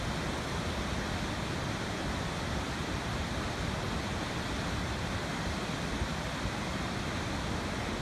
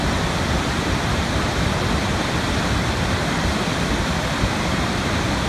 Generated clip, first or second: second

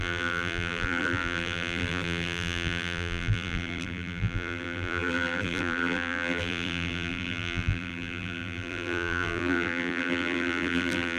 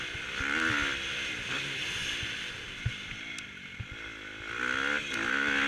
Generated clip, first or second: first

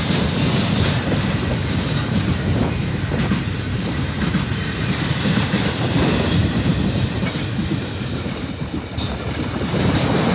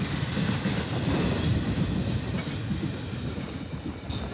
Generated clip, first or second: first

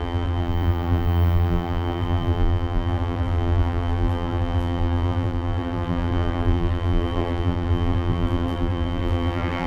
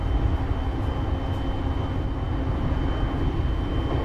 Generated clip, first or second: first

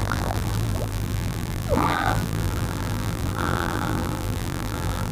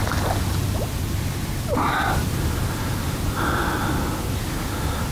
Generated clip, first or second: first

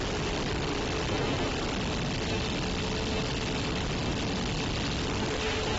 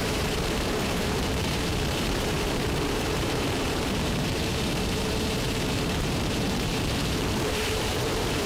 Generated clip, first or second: second